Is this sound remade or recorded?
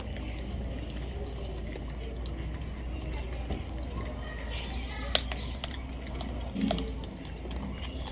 recorded